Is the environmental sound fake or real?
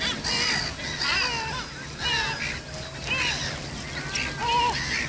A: real